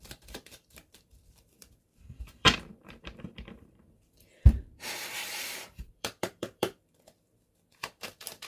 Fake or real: fake